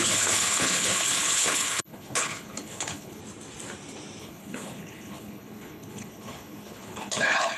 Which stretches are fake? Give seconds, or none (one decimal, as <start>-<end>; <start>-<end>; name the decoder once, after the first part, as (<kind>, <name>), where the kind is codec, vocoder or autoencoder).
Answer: 0.0-3.2 (codec, HILCodec); 4.2-7.6